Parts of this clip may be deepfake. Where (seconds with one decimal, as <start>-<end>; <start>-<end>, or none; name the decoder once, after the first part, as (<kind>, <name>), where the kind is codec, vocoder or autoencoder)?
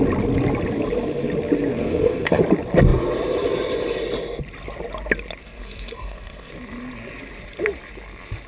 1.8-2.4 (codec, SNAC); 5.4-6.5